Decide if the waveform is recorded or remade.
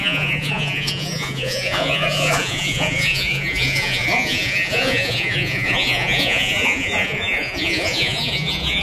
remade